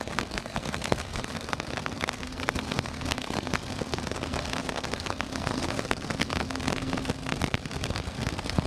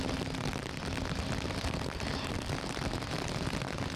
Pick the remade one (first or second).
first